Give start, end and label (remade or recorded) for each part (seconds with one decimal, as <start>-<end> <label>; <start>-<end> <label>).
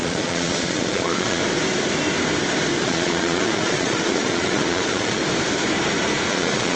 0.0-1.4 remade; 1.4-2.8 recorded; 2.8-5.2 remade; 5.2-6.3 recorded; 6.3-6.8 remade